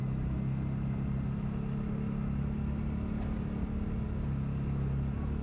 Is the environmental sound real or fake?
real